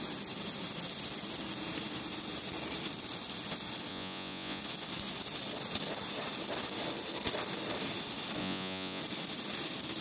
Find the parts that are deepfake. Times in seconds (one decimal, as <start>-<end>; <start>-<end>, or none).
3.9-4.6; 8.4-9.0